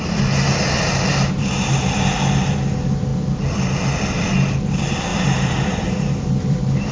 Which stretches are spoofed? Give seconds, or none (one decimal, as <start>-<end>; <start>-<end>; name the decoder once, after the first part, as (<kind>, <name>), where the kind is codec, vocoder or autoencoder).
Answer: 1.1-1.8 (vocoder, BigVGAN v2); 5.1-6.9